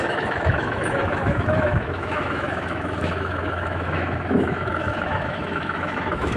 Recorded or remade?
remade